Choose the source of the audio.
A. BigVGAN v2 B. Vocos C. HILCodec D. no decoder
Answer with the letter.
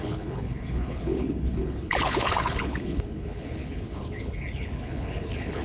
C